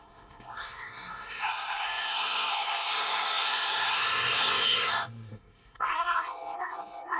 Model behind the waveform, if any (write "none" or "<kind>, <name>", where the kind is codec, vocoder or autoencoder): codec, SNAC